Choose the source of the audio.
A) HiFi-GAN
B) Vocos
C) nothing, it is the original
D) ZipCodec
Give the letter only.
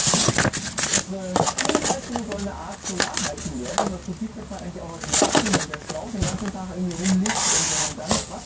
C